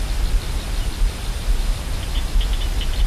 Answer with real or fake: real